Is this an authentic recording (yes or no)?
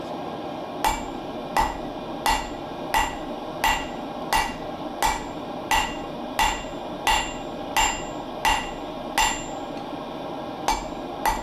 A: yes